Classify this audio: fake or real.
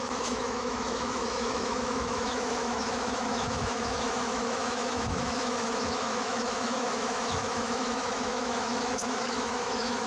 fake